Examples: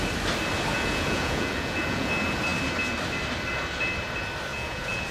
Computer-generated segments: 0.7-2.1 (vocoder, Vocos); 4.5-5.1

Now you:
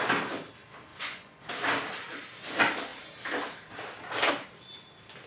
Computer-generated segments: 0.9-1.5 (vocoder, Vocos)

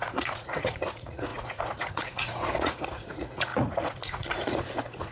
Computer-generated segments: 0.0-5.1 (vocoder, Vocos)

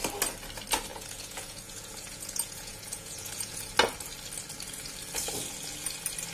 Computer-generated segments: 0.9-3.7 (vocoder, Vocos)

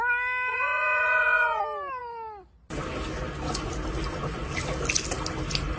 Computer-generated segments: 0.5-1.6 (vocoder, Vocos)

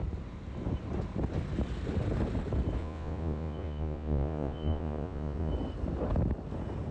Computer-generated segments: 2.8-5.5 (vocoder, Vocos)